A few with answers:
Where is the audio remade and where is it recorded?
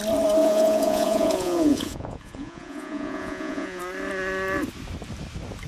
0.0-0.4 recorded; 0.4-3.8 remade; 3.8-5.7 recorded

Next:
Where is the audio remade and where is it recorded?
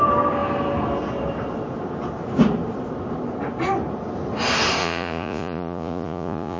0.0-4.8 recorded; 4.8-6.6 remade